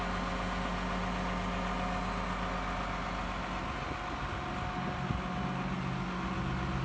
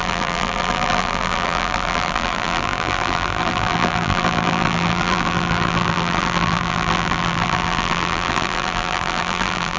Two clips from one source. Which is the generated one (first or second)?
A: second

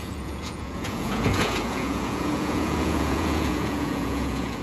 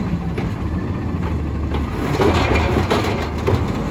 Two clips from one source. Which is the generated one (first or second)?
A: first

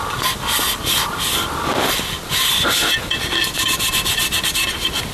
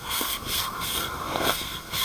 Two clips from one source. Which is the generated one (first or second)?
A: second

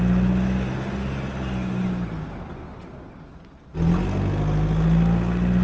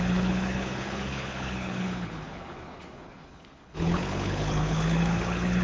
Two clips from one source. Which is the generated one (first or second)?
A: second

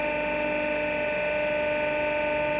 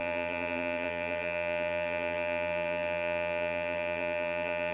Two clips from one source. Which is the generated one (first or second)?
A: second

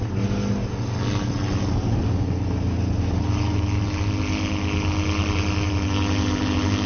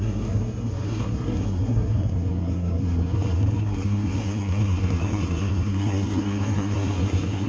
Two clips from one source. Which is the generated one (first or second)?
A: second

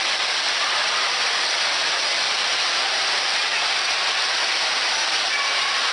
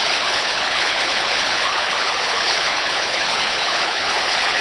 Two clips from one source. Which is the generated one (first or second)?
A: second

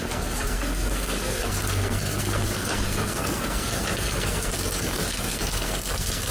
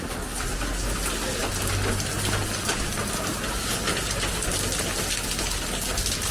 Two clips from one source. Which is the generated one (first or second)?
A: first